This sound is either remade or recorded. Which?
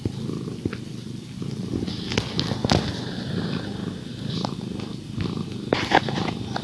recorded